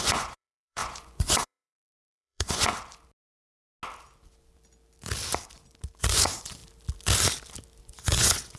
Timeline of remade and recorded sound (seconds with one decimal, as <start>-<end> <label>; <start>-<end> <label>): 0.0-2.7 remade; 2.7-6.0 recorded; 6.0-6.6 remade; 6.6-7.8 recorded; 7.8-8.6 remade